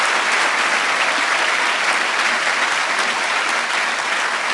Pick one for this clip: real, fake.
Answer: real